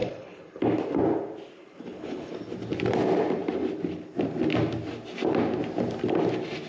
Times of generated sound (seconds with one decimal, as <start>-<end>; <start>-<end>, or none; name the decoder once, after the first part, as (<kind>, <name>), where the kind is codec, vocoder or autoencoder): 0.0-0.6 (codec, HILCodec); 1.6-2.3